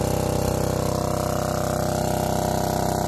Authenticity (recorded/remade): recorded